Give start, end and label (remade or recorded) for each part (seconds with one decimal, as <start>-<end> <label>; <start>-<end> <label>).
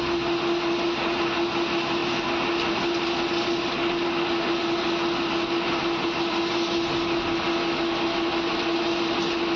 0.0-9.6 recorded